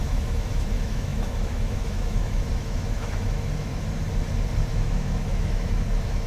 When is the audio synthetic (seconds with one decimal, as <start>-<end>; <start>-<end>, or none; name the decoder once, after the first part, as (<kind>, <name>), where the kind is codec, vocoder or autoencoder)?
0.0-3.7 (autoencoder, DAC-VAE); 4.7-6.3